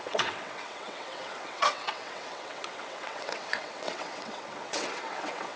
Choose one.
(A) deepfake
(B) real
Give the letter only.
A